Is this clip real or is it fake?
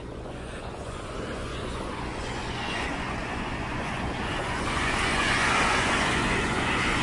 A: fake